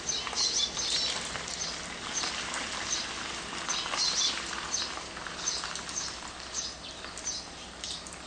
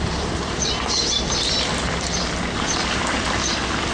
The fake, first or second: second